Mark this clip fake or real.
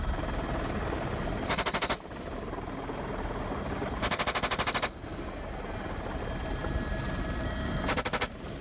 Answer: real